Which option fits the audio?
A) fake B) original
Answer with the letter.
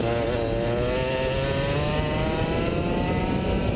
B